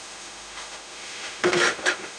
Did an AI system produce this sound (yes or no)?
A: yes